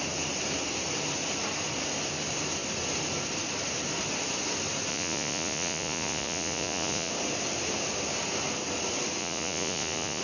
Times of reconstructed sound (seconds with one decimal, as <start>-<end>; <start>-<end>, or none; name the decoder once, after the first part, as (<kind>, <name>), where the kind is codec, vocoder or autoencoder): 4.9-7.1 (vocoder, Vocos); 9.2-10.2